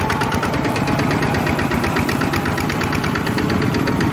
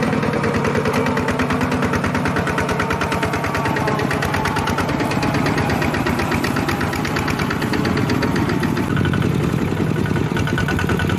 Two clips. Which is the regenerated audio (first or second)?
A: first